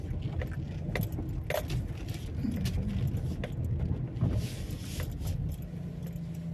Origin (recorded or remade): recorded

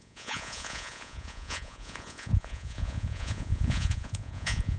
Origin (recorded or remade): remade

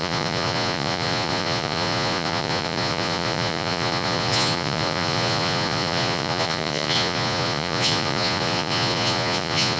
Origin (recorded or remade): remade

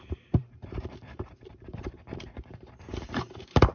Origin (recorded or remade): remade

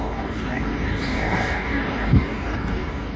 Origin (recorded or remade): remade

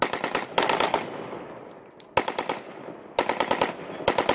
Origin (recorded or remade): recorded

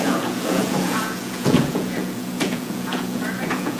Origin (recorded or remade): remade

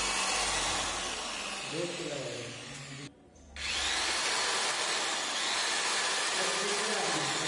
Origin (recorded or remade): recorded